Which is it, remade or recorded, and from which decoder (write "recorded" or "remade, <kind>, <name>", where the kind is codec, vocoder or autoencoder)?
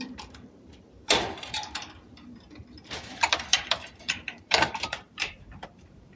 remade, vocoder, BigVGAN v2